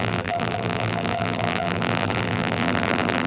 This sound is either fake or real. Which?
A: fake